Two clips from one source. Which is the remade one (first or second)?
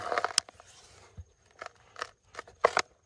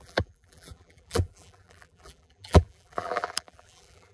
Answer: second